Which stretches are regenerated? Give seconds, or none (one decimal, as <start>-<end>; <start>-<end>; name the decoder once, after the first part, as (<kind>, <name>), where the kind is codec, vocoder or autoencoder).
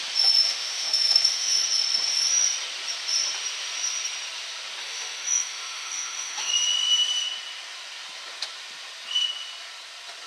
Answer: 0.4-1.5 (autoencoder, DAC-VAE); 4.8-6.5